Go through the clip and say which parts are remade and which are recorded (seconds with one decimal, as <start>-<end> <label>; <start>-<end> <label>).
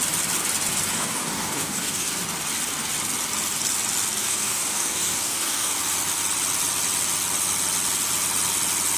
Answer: 0.0-0.9 recorded; 0.9-2.1 remade; 2.1-4.2 recorded; 4.2-5.8 remade; 5.8-9.0 recorded